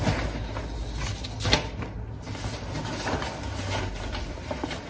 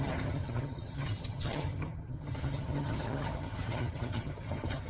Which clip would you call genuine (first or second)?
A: first